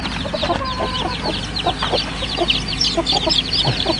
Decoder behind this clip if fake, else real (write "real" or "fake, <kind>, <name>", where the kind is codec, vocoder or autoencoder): fake, vocoder, BigVGAN v2